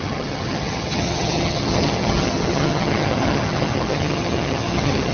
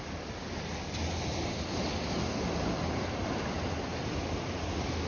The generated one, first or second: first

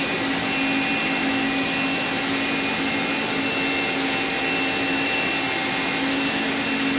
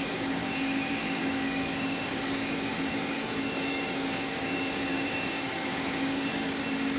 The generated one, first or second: second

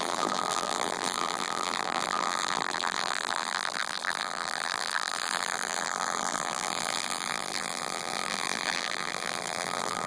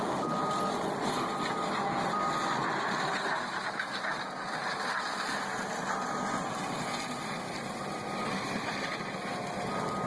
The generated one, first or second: first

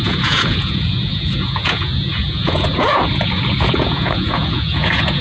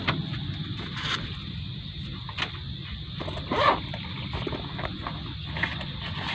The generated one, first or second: first